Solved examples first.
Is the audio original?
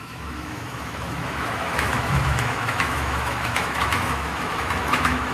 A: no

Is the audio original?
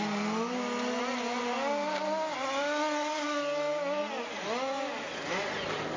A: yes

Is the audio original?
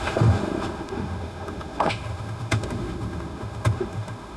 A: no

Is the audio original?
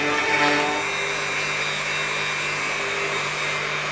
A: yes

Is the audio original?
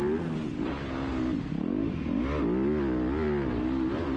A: yes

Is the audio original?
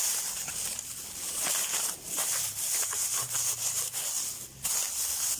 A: yes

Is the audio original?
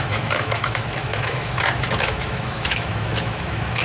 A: no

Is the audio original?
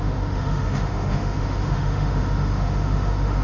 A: no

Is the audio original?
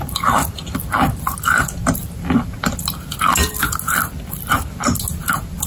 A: yes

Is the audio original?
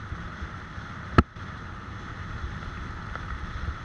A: yes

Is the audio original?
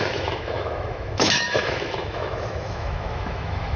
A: no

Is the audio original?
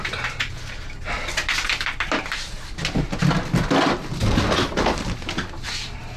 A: yes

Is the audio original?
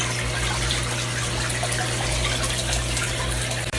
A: yes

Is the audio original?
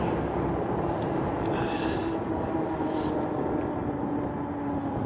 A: yes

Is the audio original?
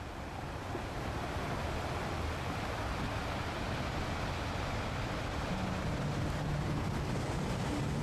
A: yes